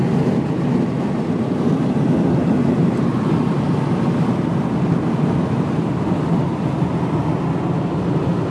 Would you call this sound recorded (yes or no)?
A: yes